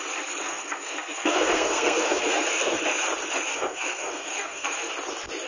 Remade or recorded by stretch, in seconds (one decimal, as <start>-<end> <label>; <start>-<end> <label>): 0.0-0.4 recorded; 0.4-2.8 remade; 2.8-3.5 recorded; 3.5-4.9 remade; 4.9-5.5 recorded